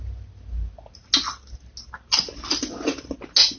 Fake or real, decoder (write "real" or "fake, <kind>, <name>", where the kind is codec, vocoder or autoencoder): real